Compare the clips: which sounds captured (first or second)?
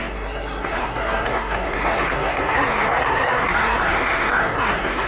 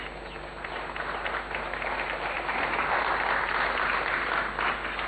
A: second